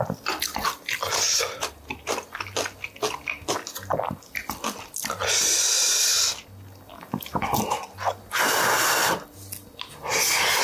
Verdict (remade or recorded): recorded